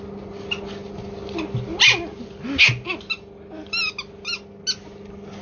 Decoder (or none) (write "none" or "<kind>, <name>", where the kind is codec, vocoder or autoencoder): none